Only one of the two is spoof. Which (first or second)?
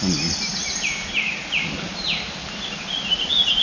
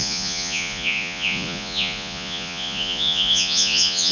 second